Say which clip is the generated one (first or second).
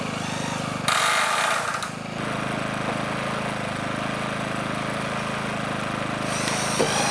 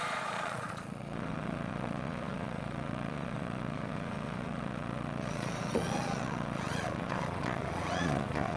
second